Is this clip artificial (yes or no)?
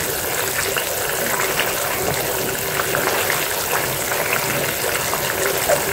no